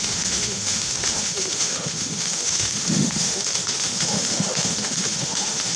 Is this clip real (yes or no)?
no